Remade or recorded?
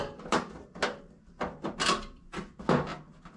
recorded